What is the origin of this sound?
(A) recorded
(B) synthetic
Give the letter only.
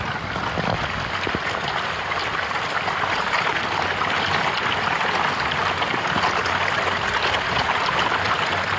A